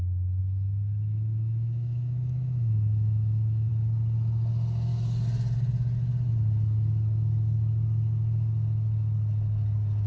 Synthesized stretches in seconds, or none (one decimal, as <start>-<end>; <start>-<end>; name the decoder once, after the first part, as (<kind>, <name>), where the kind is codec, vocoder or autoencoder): 0.4-3.7 (autoencoder, DAC-VAE)